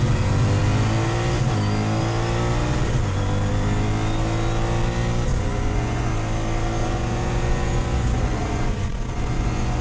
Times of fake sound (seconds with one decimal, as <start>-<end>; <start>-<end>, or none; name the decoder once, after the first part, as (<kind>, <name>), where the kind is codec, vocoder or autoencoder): 5.3-6.1 (vocoder, Vocos); 6.8-9.8